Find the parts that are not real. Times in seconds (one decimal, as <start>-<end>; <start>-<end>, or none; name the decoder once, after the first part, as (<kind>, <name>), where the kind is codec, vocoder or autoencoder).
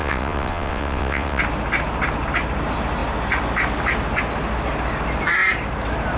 0.0-1.4 (vocoder, WaveNeXt)